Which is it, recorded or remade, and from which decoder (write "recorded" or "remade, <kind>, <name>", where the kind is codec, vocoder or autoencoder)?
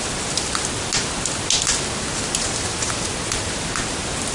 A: recorded